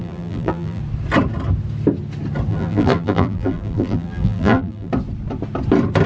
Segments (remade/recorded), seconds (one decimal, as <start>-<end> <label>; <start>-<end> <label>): 0.0-0.8 remade; 0.8-2.5 recorded; 2.5-4.9 remade; 4.9-6.1 recorded